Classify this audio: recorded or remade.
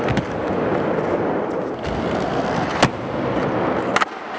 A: recorded